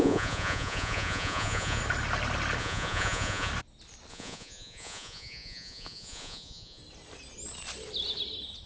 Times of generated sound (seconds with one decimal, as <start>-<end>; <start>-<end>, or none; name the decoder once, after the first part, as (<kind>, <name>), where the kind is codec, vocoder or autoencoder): 0.0-1.8 (vocoder, Vocos); 2.6-3.5; 4.1-6.8